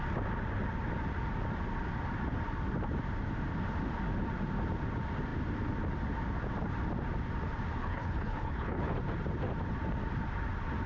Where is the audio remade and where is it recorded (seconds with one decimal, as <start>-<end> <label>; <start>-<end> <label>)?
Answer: 0.0-7.8 recorded; 7.8-8.9 remade; 8.9-10.9 recorded